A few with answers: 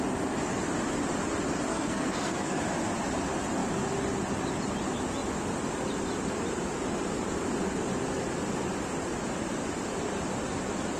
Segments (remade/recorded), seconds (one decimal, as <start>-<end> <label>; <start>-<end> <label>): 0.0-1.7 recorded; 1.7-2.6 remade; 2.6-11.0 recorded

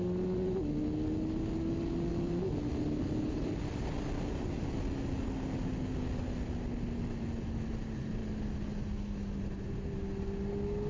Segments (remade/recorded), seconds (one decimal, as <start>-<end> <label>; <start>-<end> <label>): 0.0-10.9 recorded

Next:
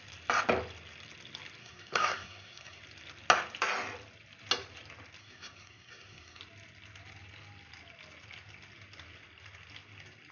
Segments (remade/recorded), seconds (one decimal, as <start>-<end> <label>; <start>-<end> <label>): 0.0-1.6 recorded; 1.6-2.8 remade; 2.8-5.2 recorded; 5.2-6.4 remade; 6.4-10.3 recorded

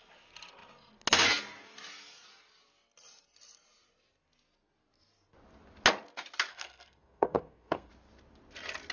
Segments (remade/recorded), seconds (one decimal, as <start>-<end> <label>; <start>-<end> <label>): 0.0-6.5 recorded; 6.5-7.9 remade; 7.9-8.9 recorded

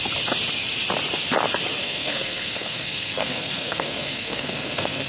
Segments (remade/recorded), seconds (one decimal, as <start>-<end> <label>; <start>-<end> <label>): 0.0-1.8 recorded; 1.8-5.1 remade